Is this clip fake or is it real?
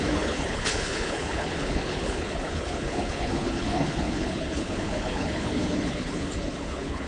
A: fake